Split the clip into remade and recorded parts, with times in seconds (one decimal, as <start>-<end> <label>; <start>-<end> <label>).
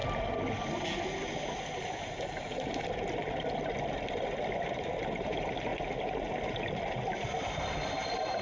0.0-5.7 recorded; 5.7-8.4 remade